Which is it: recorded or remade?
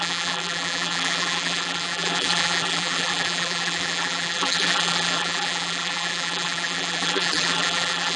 remade